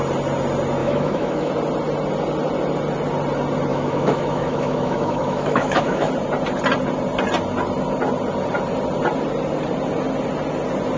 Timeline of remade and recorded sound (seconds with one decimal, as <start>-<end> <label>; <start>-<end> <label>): 0.0-0.8 recorded; 0.8-1.5 remade; 1.5-3.7 recorded; 3.7-6.1 remade; 6.1-11.0 recorded